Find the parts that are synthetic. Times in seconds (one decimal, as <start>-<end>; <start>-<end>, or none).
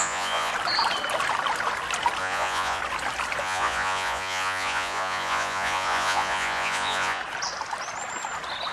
0.0-0.5; 2.2-2.8; 3.4-7.2